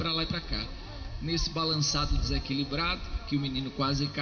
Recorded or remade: recorded